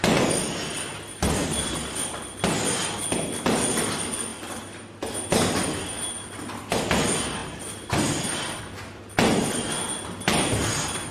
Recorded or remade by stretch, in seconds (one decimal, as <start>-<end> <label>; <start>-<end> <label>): 0.0-1.4 recorded; 1.4-3.0 remade; 3.0-4.3 recorded; 4.3-5.1 remade; 5.1-7.4 recorded; 7.4-8.6 remade; 8.6-11.1 recorded